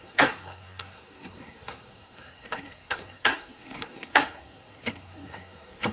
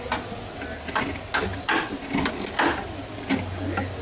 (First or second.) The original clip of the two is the second